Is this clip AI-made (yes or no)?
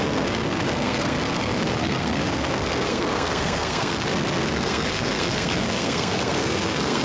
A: yes